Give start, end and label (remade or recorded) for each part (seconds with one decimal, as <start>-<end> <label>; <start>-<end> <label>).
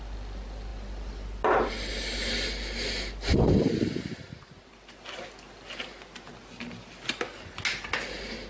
0.0-8.5 recorded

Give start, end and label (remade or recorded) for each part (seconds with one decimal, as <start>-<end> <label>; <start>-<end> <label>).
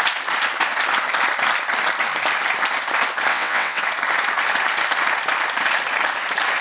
0.0-3.3 recorded; 3.3-3.8 remade; 3.8-6.6 recorded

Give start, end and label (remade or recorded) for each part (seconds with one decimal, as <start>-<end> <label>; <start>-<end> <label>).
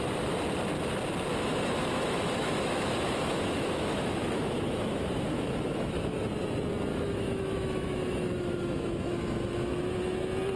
0.0-1.3 recorded; 1.3-6.3 remade; 6.3-6.9 recorded; 6.9-8.9 remade; 8.9-10.6 recorded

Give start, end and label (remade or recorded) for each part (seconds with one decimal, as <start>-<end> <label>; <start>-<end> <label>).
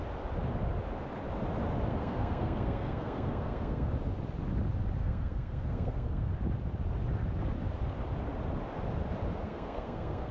0.0-1.9 recorded; 1.9-3.9 remade; 3.9-5.0 recorded; 5.0-6.3 remade; 6.3-9.4 recorded; 9.4-10.3 remade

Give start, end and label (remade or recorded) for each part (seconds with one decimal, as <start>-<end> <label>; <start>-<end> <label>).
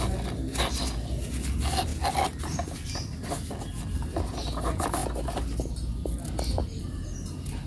0.0-7.7 recorded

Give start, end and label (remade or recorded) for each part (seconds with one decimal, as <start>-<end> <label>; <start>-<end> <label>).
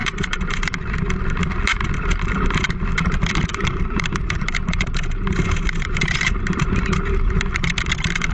0.0-0.9 remade; 0.9-3.5 recorded; 3.5-6.9 remade; 6.9-8.3 recorded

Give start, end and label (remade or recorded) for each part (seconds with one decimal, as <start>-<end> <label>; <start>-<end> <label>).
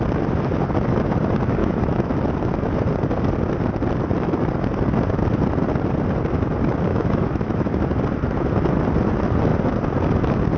0.0-1.6 recorded; 1.6-2.1 remade; 2.1-6.9 recorded; 6.9-7.8 remade; 7.8-10.6 recorded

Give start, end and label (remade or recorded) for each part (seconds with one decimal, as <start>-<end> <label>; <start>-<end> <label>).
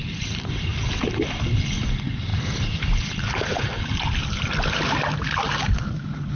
0.0-0.7 remade; 0.7-1.3 recorded; 1.3-2.3 remade; 2.3-6.3 recorded